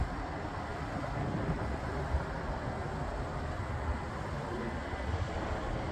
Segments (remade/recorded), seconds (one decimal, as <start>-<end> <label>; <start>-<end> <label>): 0.0-5.9 recorded